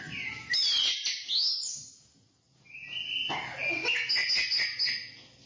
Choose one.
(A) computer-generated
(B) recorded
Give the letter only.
B